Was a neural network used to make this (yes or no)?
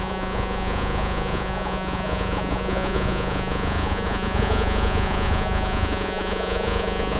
yes